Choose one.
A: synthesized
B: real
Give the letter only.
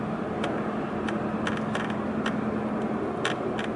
B